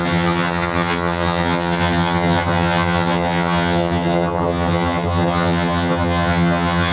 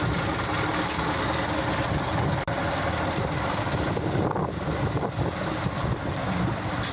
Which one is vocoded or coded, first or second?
first